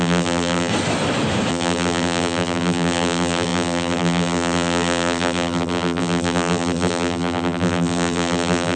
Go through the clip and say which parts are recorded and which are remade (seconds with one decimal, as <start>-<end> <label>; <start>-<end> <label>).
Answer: 0.0-0.7 remade; 0.7-1.5 recorded; 1.5-8.8 remade